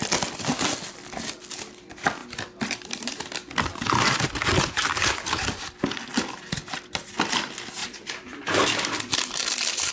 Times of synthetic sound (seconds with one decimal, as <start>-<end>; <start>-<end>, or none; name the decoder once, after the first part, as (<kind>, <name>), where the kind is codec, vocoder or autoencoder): 7.8-9.9 (vocoder, BigVGAN v2)